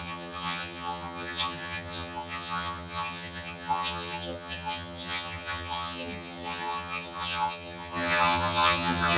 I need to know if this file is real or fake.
fake